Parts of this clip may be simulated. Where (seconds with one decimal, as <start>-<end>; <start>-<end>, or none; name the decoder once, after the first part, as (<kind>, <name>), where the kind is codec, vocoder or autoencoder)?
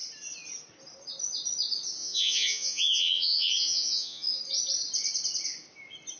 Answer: 2.0-4.4 (vocoder, Vocos)